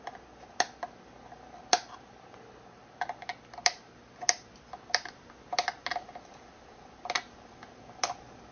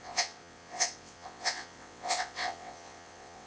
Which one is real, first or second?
first